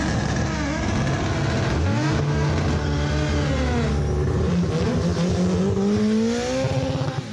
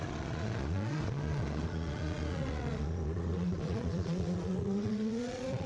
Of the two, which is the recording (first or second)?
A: first